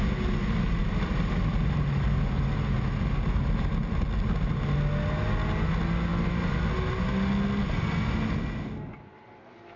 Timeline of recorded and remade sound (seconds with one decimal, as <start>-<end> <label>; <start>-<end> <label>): 0.0-0.8 recorded; 0.8-3.7 remade; 3.7-9.8 recorded